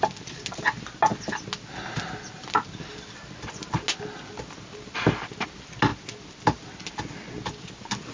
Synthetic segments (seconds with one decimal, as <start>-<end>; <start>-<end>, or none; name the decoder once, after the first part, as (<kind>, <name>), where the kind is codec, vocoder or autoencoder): none